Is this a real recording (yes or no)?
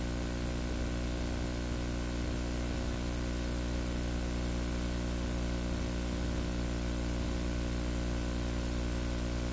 yes